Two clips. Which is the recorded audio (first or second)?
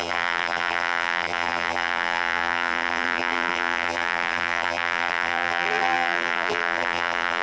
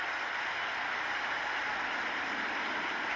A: second